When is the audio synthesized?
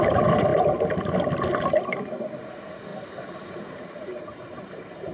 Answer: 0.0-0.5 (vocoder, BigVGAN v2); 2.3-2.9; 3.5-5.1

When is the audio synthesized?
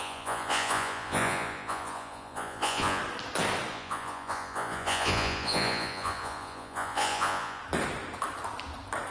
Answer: 0.0-3.0 (vocoder, Vocos); 3.7-7.6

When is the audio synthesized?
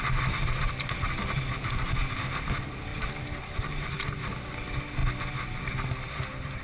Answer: 2.9-3.9 (vocoder, BigVGAN v2)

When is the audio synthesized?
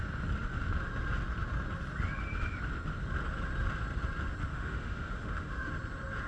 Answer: 4.5-5.7 (autoencoder, DAC-VAE)